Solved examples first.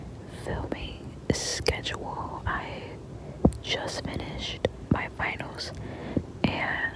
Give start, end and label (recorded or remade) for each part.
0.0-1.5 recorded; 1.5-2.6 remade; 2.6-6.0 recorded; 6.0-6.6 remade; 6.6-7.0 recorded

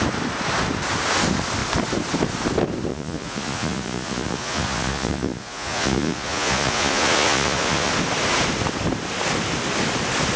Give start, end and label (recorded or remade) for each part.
0.0-2.9 recorded; 2.9-7.9 remade; 7.9-10.4 recorded

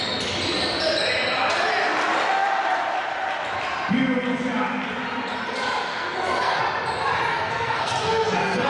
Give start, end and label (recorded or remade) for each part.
0.0-5.9 recorded; 5.9-6.6 remade; 6.6-7.3 recorded; 7.3-8.7 remade

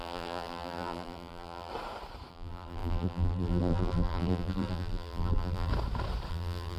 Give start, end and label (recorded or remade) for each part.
0.0-1.7 remade; 1.7-2.3 recorded; 2.3-5.7 remade; 5.7-6.3 recorded; 6.3-6.8 remade

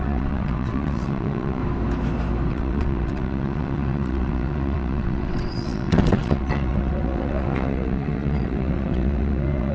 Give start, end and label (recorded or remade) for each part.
0.0-1.6 remade; 1.6-2.5 recorded; 2.5-9.7 remade

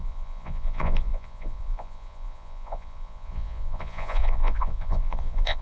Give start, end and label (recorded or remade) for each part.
0.0-5.6 remade